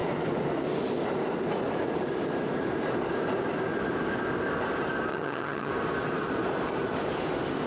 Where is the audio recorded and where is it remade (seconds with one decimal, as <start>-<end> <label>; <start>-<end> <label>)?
0.0-5.1 recorded; 5.1-5.7 remade; 5.7-7.7 recorded